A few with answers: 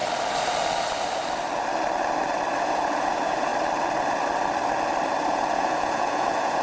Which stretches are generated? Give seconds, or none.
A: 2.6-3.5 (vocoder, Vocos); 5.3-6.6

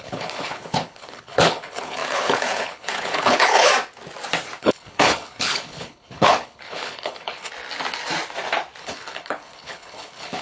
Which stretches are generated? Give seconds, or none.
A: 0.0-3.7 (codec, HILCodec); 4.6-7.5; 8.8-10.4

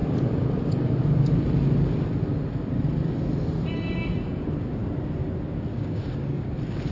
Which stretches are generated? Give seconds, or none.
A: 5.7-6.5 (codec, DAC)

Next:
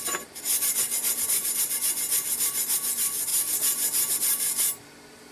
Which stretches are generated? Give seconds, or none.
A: none